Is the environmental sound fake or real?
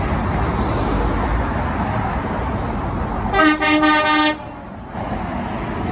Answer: real